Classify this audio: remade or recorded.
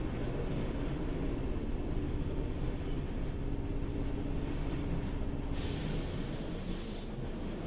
recorded